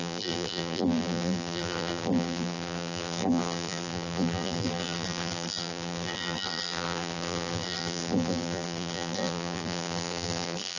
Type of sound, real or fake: fake